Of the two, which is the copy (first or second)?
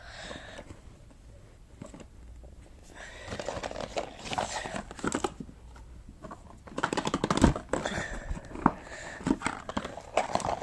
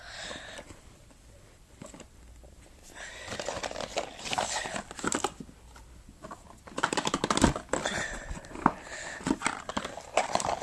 second